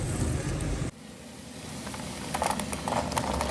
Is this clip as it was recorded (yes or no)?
yes